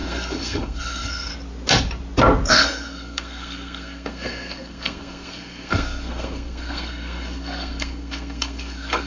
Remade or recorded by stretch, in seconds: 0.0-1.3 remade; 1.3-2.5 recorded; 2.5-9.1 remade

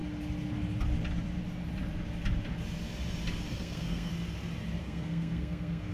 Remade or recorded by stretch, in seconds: 0.0-3.5 recorded; 3.5-4.1 remade; 4.1-4.8 recorded; 4.8-5.9 remade